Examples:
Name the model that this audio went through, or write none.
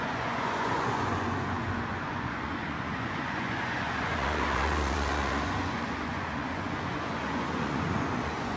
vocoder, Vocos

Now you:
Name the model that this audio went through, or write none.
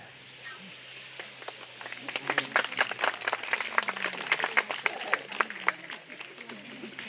none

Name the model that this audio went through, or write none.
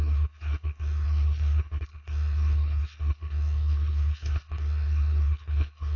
codec, HILCodec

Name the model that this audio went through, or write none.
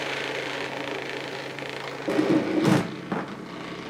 none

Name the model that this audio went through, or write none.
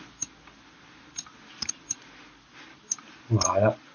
none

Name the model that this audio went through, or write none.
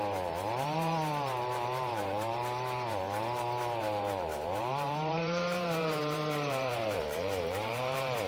vocoder, BigVGAN v2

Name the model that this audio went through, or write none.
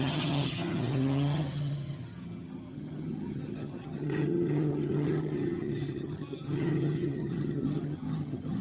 vocoder, HiFi-GAN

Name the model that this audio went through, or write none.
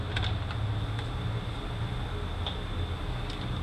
none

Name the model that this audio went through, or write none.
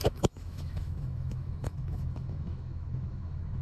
autoencoder, DAC-VAE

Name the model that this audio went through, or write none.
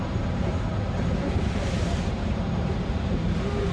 vocoder, BigVGAN v2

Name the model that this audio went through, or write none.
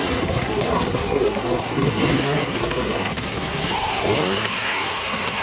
codec, SNAC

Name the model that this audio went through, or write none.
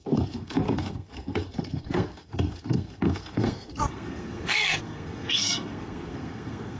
codec, SNAC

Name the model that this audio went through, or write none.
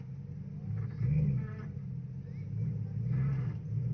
none